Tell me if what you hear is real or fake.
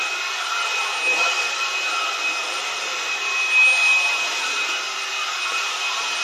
real